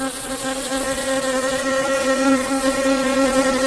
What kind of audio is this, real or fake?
fake